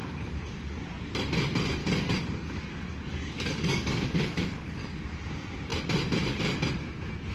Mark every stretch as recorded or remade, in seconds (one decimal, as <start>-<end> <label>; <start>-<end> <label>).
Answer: 0.0-0.8 remade; 0.8-1.8 recorded; 1.8-5.1 remade; 5.1-7.3 recorded